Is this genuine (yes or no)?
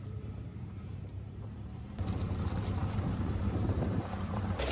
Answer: no